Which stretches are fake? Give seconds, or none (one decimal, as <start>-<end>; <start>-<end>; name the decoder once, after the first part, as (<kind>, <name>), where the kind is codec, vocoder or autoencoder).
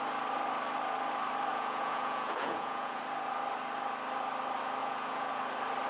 1.5-3.0 (vocoder, Vocos); 4.8-5.3